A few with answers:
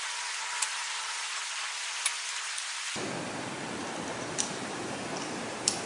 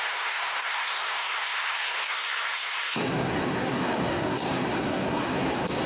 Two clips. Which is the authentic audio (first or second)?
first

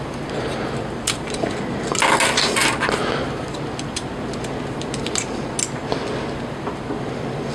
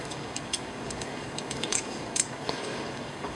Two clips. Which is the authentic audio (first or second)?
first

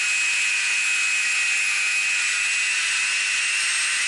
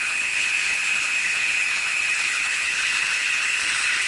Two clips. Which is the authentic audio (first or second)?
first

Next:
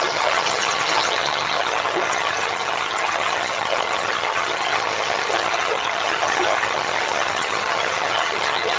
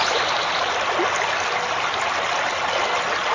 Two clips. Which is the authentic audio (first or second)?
second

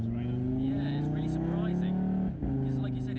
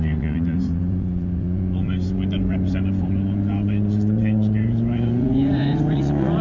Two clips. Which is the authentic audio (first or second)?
first